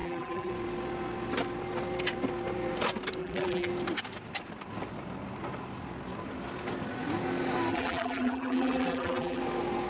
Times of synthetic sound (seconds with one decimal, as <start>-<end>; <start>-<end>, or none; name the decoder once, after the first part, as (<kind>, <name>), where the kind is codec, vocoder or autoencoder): 0.0-0.5 (vocoder, BigVGAN v2); 3.2-3.7; 7.7-9.4